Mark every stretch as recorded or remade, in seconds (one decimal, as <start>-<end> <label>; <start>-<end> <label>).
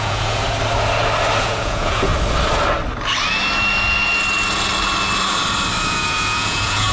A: 0.0-0.4 remade; 0.4-1.4 recorded; 1.4-2.1 remade; 2.1-5.8 recorded; 5.8-6.9 remade